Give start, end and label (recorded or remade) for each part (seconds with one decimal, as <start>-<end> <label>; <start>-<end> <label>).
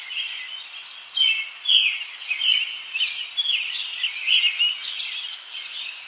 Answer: 0.0-6.1 recorded